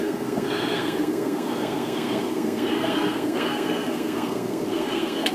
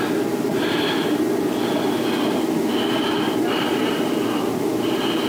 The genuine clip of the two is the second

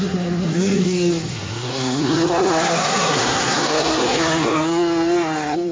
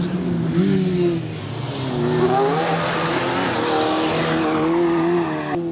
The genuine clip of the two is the second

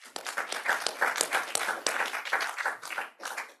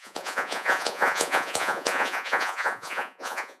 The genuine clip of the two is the first